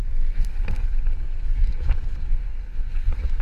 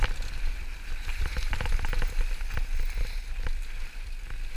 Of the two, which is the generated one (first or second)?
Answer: first